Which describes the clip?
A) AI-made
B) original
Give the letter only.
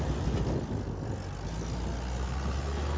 B